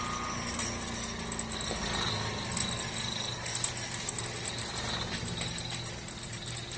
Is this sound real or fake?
real